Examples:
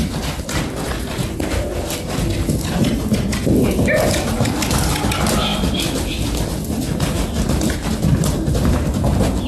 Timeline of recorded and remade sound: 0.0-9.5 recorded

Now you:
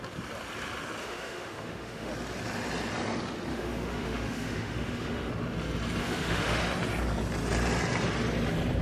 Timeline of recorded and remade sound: 0.0-1.0 recorded; 1.0-2.1 remade; 2.1-3.5 recorded; 3.5-5.3 remade; 5.3-6.0 recorded; 6.0-6.6 remade; 6.6-8.8 recorded

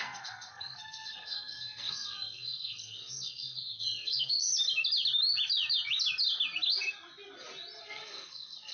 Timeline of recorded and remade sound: 0.0-4.5 remade; 4.5-7.8 recorded; 7.8-8.7 remade

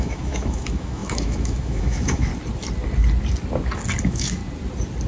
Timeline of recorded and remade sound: 0.0-2.3 remade; 2.3-4.0 recorded; 4.0-4.4 remade; 4.4-5.1 recorded